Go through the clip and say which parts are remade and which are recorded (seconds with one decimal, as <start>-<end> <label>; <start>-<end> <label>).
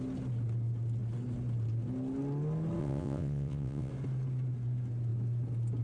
0.0-2.8 recorded; 2.8-3.9 remade; 3.9-5.8 recorded